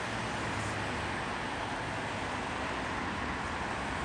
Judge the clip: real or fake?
real